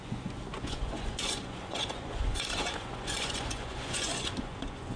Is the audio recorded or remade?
remade